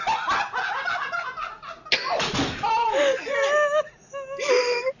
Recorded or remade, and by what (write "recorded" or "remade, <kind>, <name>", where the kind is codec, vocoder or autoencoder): recorded